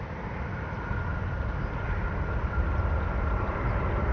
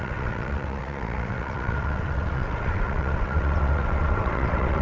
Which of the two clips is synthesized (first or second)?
second